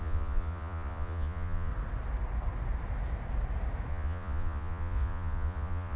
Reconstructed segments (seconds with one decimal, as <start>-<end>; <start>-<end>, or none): 0.0-1.7; 3.9-6.0